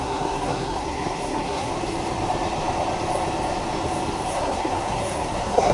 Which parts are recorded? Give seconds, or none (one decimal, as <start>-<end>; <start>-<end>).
1.7-4.3